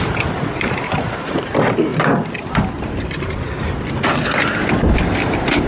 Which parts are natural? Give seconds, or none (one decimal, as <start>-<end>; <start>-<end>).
0.0-5.7